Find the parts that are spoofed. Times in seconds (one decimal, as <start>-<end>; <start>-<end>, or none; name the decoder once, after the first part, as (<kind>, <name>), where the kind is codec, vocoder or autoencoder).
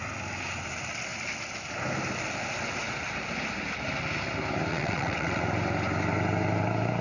4.7-5.4 (vocoder, WaveNeXt)